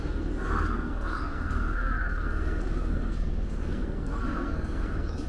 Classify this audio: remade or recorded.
remade